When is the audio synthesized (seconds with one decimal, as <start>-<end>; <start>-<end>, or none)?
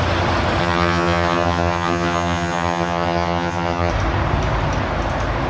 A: 0.6-3.9